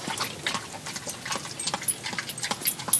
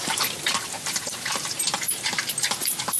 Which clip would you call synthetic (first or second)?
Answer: second